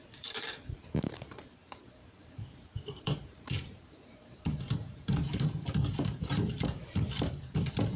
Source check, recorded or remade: remade